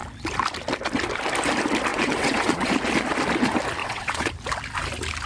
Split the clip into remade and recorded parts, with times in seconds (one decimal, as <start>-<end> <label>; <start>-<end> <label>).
0.0-1.9 recorded; 1.9-2.7 remade; 2.7-3.8 recorded; 3.8-4.3 remade; 4.3-5.3 recorded